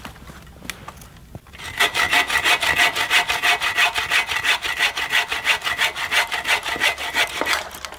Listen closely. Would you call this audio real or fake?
real